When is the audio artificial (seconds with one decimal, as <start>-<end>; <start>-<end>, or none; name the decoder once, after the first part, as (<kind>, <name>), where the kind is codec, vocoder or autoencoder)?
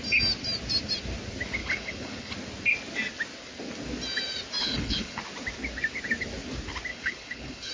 1.6-2.3 (codec, HILCodec); 4.6-5.2; 6.9-7.7